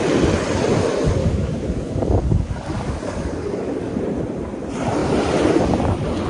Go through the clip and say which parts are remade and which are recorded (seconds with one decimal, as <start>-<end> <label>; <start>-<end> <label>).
0.0-1.2 recorded; 1.2-4.0 remade; 4.0-6.3 recorded